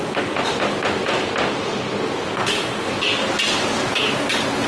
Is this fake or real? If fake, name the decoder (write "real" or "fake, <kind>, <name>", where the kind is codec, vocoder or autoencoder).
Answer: real